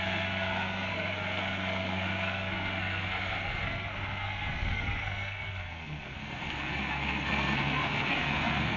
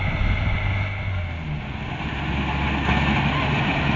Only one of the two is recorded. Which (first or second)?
second